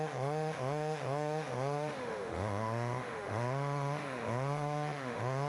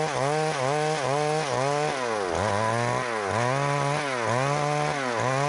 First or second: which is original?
second